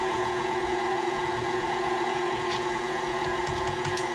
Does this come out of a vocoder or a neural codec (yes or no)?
yes